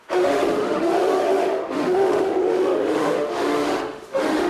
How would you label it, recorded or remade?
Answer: remade